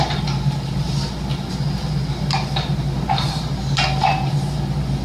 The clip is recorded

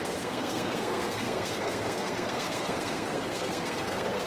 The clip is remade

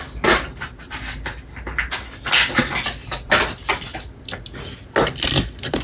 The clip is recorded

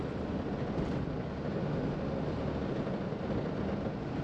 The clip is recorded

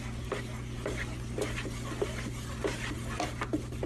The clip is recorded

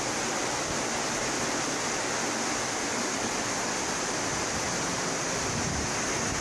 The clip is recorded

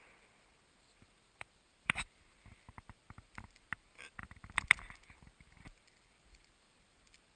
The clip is recorded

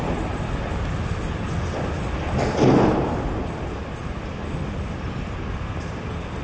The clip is recorded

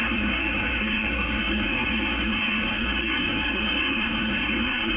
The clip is remade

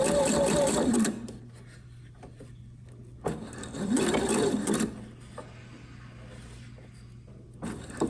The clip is recorded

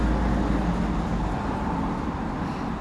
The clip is recorded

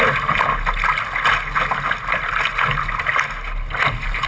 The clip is recorded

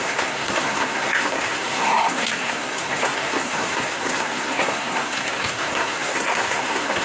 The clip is remade